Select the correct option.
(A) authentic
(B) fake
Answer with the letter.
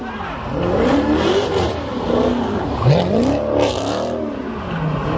A